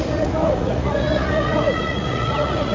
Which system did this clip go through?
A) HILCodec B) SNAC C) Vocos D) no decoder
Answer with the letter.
C